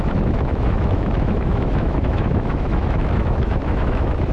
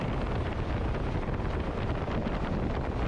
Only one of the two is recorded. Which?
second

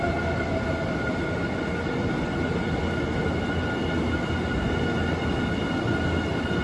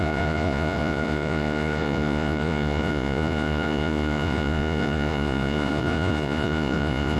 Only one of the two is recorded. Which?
first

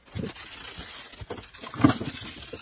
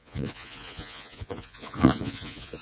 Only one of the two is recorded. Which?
first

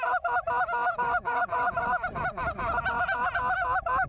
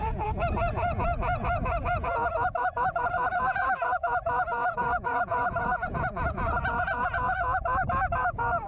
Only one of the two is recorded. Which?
first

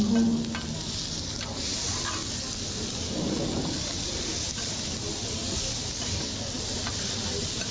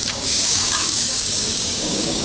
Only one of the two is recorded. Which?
first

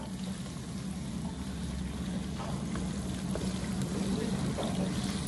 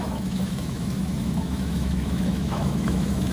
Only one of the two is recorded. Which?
first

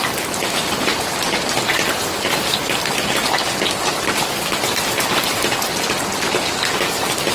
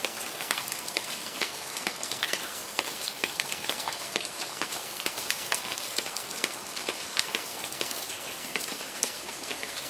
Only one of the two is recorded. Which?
first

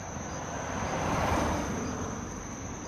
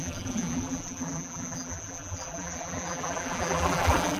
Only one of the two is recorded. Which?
first